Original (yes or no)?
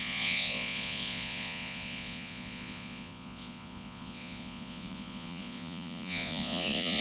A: no